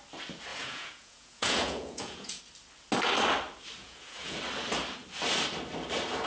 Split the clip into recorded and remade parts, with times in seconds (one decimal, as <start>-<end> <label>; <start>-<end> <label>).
0.0-0.5 recorded; 0.5-2.4 remade; 2.4-3.8 recorded; 3.8-4.4 remade; 4.4-6.3 recorded